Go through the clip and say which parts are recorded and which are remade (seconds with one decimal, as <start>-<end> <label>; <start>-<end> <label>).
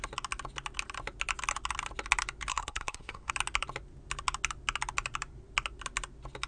0.0-2.5 recorded; 2.5-3.3 remade; 3.3-6.5 recorded